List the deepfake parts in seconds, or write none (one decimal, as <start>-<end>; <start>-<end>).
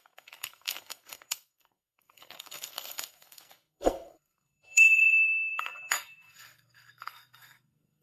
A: 0.0-8.0